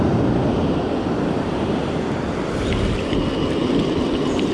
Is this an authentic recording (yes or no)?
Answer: yes